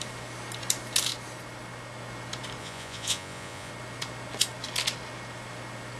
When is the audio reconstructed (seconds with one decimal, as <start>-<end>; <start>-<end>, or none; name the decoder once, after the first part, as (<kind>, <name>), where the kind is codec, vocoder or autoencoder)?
2.6-3.7 (vocoder, Vocos)